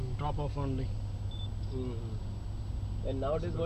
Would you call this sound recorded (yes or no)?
yes